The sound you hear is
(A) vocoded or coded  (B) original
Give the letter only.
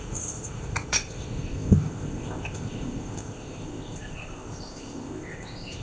A